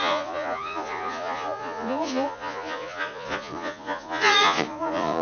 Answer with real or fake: fake